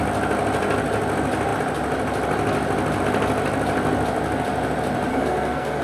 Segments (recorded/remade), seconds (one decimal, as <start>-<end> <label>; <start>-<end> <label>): 0.0-5.1 recorded; 5.1-5.8 remade